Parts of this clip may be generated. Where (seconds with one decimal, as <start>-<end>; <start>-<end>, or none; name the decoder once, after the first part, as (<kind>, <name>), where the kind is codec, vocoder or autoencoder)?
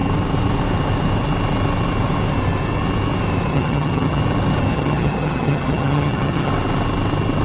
3.5-4.2 (vocoder, HiFi-GAN); 4.7-6.5